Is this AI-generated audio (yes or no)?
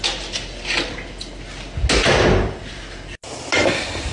no